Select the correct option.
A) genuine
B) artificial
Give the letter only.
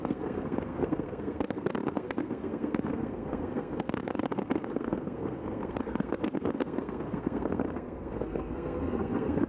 B